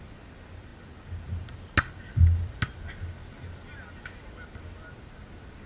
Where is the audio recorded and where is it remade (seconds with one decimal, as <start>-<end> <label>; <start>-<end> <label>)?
0.0-5.7 recorded